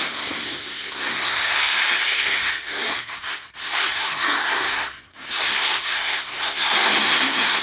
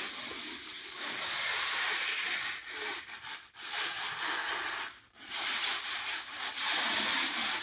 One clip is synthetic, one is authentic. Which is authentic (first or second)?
second